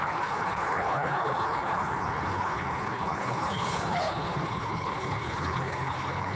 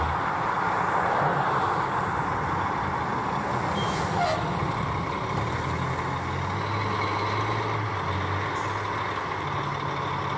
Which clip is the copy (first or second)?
first